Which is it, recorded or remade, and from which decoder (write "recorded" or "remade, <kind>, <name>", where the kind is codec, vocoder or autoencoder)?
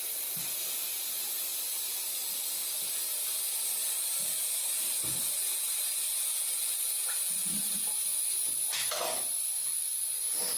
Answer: recorded